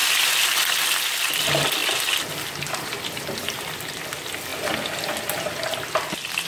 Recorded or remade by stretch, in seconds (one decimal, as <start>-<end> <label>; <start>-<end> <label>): 0.0-6.5 recorded